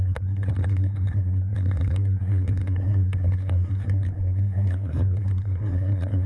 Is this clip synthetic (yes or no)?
yes